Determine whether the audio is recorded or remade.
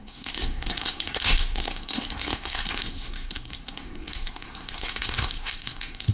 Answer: remade